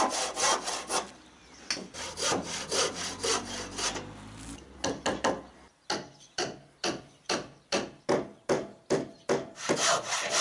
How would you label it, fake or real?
real